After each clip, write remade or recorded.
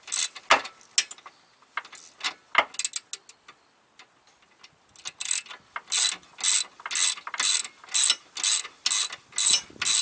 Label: recorded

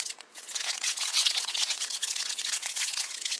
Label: remade